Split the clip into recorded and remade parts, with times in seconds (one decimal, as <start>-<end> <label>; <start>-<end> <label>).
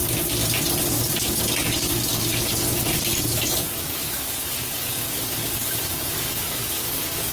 0.0-0.9 recorded; 0.9-7.3 remade